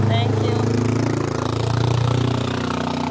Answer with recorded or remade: recorded